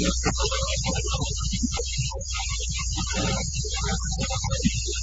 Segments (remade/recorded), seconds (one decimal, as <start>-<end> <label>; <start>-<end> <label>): 0.0-0.7 recorded; 0.7-3.7 remade; 3.7-5.0 recorded